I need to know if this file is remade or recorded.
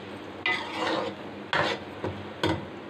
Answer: recorded